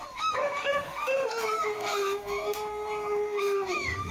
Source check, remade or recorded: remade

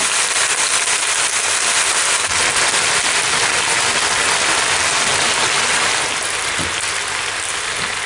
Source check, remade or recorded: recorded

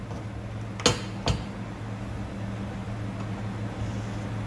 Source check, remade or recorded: recorded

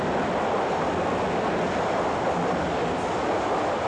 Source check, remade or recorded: recorded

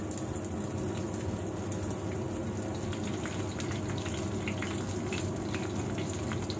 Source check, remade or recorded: recorded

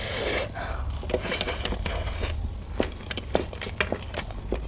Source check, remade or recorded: recorded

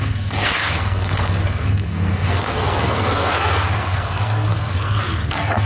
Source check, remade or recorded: remade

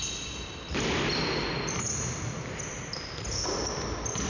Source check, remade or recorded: recorded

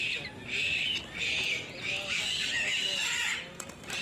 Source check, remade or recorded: recorded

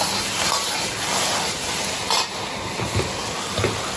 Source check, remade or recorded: recorded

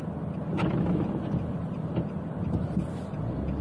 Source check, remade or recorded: recorded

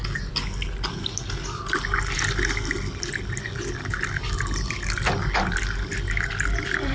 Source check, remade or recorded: recorded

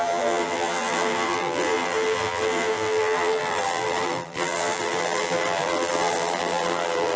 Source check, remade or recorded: remade